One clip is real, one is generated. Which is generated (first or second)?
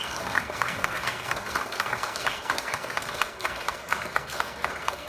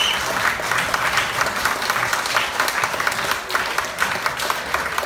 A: first